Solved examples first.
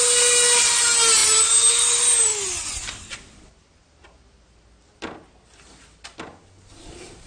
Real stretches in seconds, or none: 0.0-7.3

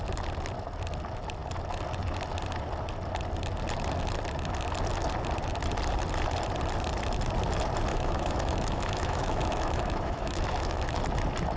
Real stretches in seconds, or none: 0.0-7.9; 11.0-11.6

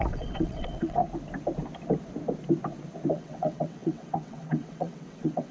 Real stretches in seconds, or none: 1.0-3.1

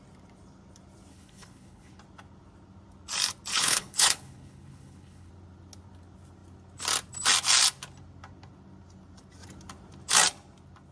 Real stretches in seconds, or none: 0.0-1.1; 2.0-3.5; 5.3-10.9